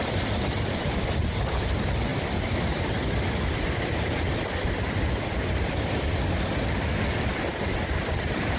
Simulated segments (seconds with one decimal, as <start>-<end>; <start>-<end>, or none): none